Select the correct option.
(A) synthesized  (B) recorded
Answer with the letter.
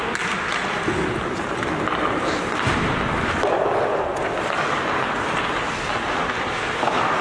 B